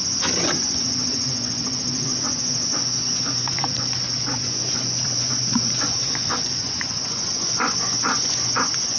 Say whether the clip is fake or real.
fake